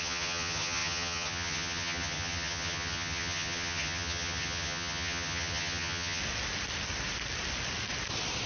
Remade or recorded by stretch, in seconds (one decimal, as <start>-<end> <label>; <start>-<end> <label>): 0.0-6.2 remade; 6.2-8.5 recorded